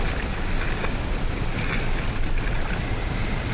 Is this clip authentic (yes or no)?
yes